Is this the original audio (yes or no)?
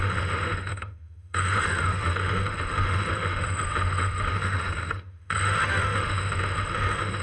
no